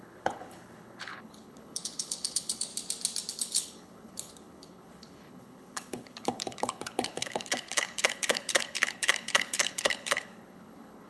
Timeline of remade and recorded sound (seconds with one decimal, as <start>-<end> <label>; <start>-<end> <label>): 0.0-2.7 remade; 2.7-3.3 recorded; 3.3-11.1 remade